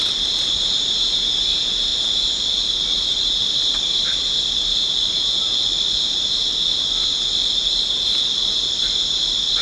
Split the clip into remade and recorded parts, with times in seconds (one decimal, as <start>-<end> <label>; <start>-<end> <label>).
0.0-9.6 recorded